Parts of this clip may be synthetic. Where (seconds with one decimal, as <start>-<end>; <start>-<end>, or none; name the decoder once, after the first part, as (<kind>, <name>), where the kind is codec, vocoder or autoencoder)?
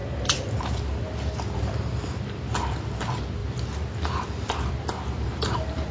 none